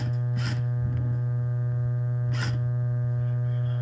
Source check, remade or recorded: recorded